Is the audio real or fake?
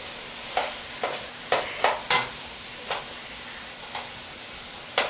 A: real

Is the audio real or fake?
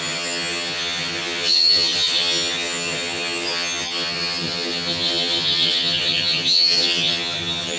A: fake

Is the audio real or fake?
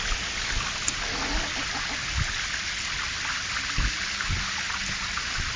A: real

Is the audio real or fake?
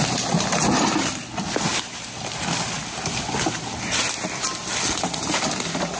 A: real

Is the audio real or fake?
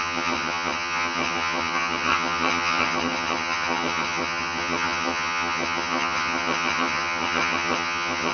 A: fake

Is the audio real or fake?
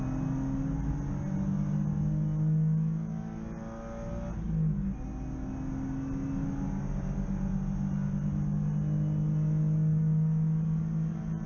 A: real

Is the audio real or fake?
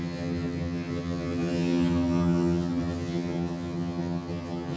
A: fake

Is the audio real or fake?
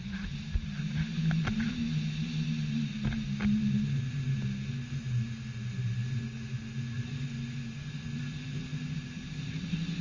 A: real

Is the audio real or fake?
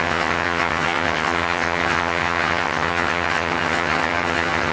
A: fake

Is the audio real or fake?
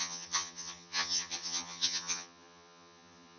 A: fake